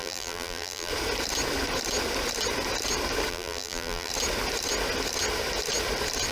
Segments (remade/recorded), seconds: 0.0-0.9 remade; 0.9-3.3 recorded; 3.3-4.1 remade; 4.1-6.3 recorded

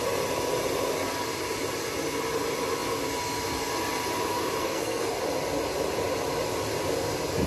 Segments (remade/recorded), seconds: 0.0-4.6 recorded; 4.6-5.2 remade; 5.2-7.5 recorded

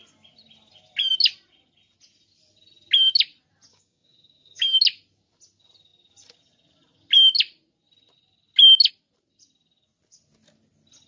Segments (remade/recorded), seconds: 0.0-3.7 recorded; 3.7-4.8 remade; 4.8-11.1 recorded

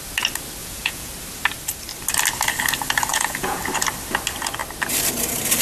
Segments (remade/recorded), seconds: 0.0-0.6 recorded; 0.6-1.1 remade; 1.1-3.1 recorded; 3.1-3.6 remade; 3.6-5.6 recorded

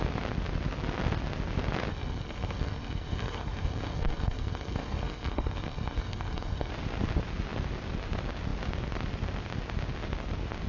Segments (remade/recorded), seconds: 0.0-1.9 recorded; 1.9-6.7 remade; 6.7-10.7 recorded